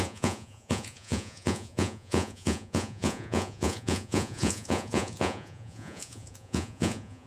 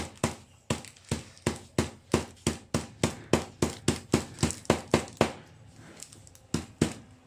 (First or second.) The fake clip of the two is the first